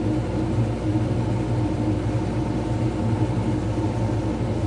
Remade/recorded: recorded